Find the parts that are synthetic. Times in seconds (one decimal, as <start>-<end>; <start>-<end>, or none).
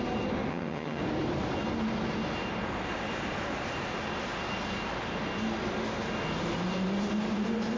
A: 0.5-1.0